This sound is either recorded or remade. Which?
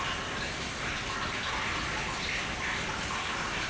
recorded